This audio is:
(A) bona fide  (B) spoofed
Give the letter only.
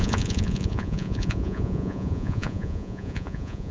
B